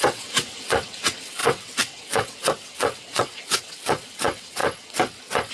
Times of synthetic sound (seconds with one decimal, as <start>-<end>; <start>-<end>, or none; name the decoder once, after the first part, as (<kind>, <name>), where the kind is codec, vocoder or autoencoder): 0.0-5.5 (vocoder, WaveNeXt)